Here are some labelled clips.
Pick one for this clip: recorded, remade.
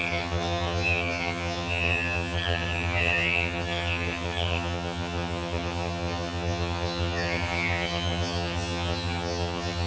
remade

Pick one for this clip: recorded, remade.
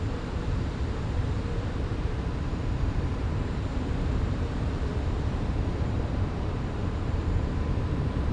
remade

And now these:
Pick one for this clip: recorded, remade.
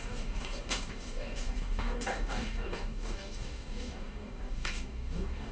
remade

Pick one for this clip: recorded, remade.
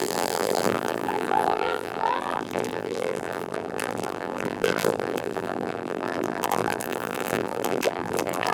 remade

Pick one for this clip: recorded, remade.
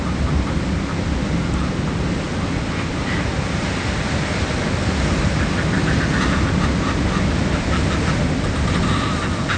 recorded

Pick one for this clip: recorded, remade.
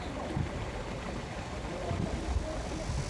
recorded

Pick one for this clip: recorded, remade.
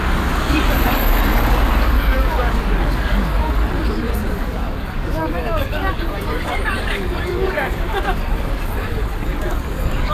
remade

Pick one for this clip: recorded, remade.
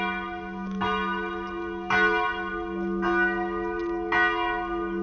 recorded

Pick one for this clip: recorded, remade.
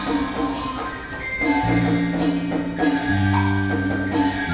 recorded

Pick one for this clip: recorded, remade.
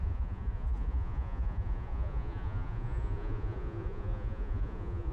remade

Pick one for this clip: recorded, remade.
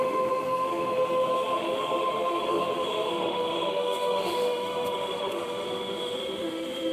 remade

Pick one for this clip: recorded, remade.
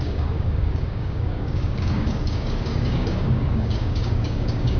remade